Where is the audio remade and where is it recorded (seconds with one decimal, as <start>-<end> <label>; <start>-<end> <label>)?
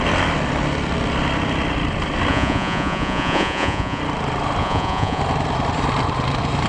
0.0-2.3 recorded; 2.3-4.0 remade; 4.0-4.6 recorded; 4.6-5.2 remade; 5.2-6.7 recorded